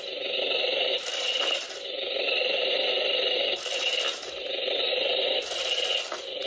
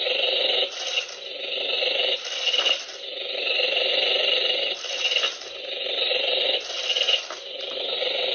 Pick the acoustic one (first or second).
second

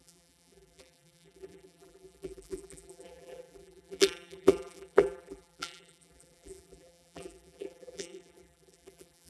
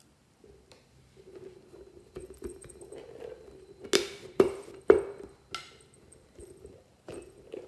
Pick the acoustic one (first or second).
second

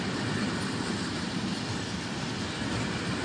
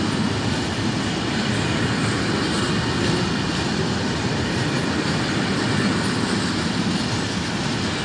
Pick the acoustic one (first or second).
second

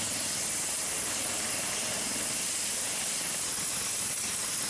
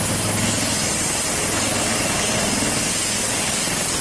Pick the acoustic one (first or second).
second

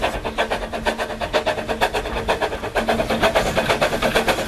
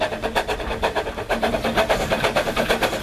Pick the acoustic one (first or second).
first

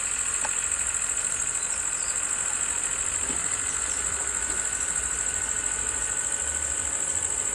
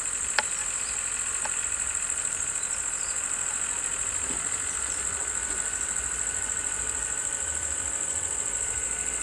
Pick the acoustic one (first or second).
first